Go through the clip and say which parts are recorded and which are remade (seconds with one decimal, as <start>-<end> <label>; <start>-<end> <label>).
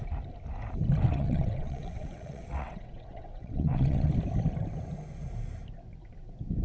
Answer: 0.0-1.1 recorded; 1.1-4.1 remade; 4.1-6.6 recorded